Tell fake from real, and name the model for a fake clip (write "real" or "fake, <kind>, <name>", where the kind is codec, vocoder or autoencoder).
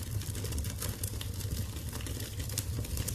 fake, vocoder, BigVGAN v2